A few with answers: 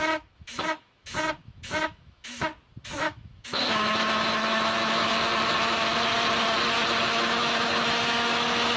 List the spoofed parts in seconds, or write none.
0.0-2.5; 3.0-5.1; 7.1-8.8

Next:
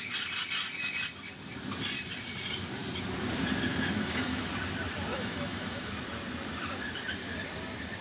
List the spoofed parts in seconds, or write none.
3.7-4.5; 5.1-5.9